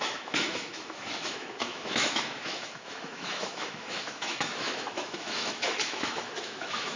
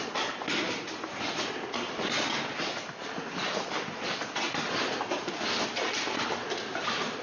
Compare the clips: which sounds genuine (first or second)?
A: second